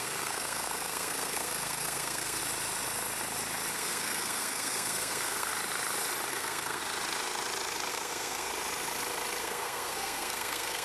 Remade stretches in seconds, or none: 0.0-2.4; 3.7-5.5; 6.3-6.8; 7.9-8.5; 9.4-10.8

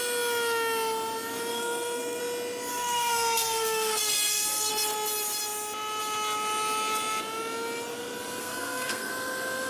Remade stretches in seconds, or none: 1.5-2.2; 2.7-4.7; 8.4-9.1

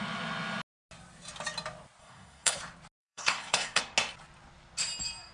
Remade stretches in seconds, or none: 2.0-2.6; 3.0-3.8

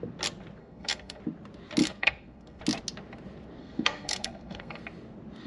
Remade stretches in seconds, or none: 0.6-1.2; 1.8-2.6; 3.6-4.8